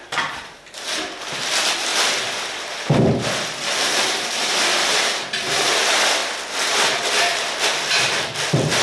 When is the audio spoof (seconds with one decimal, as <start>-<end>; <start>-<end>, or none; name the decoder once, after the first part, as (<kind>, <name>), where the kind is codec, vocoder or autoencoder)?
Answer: 0.0-6.2 (vocoder, BigVGAN v2); 6.7-8.8